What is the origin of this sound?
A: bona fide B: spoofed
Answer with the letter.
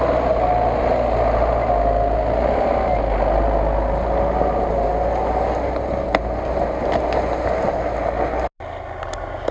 A